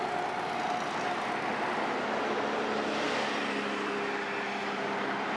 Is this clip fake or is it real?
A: real